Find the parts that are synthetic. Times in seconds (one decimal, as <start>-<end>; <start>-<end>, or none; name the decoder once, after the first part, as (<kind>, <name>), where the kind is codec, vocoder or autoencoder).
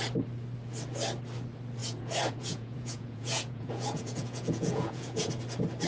1.8-5.3 (vocoder, Vocos)